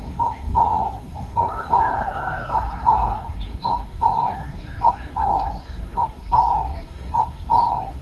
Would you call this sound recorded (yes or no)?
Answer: no